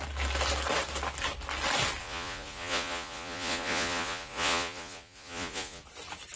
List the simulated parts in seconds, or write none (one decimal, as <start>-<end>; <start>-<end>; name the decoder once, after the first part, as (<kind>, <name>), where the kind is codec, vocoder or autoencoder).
2.0-5.8 (vocoder, Vocos)